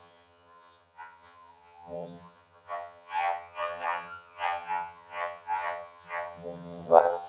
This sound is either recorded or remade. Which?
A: remade